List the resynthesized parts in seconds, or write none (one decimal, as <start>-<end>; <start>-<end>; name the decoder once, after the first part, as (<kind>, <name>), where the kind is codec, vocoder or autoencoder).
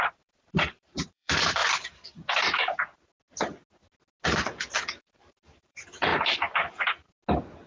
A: 0.0-1.6 (vocoder, BigVGAN v2); 5.0-6.1